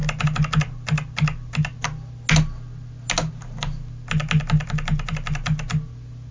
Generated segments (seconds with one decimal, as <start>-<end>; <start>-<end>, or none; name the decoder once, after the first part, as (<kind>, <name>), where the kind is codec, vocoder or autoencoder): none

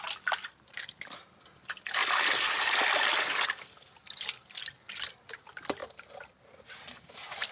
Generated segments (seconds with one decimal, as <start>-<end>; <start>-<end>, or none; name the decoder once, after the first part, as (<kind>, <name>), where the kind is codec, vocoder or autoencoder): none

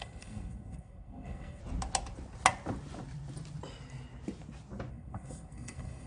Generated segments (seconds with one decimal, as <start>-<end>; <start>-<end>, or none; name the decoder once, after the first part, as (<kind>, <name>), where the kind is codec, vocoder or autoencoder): 0.0-1.6 (codec, SNAC); 4.9-6.1

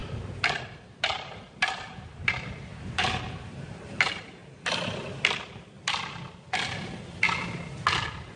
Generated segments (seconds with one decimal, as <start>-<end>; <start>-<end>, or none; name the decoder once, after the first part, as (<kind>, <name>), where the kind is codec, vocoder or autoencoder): 0.0-4.4 (vocoder, BigVGAN v2)